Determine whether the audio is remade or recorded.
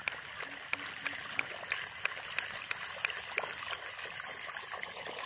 recorded